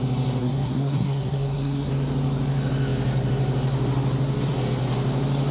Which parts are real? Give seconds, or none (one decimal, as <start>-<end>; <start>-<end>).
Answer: 0.0-0.4; 1.9-5.5